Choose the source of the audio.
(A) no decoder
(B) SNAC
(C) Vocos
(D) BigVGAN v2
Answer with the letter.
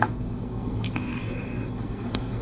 B